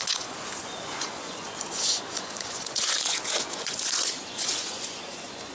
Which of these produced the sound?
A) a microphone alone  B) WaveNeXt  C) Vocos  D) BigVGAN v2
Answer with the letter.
C